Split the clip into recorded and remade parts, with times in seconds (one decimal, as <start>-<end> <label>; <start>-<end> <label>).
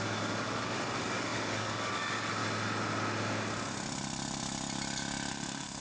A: 0.0-2.4 remade; 2.4-5.3 recorded; 5.3-5.8 remade